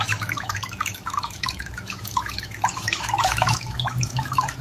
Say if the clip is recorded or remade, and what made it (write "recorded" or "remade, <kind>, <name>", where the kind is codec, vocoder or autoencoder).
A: remade, autoencoder, DAC-VAE